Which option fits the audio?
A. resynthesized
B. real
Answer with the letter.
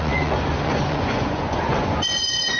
A